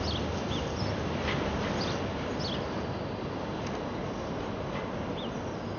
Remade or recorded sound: recorded